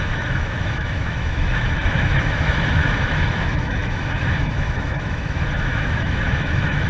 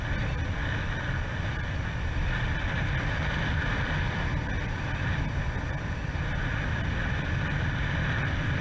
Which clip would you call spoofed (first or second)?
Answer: first